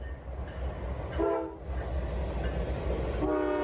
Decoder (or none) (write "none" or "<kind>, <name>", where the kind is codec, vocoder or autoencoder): none